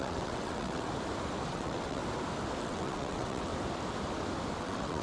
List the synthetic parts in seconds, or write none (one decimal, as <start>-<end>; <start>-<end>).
0.0-0.9; 1.5-2.0; 2.6-3.5; 4.6-5.0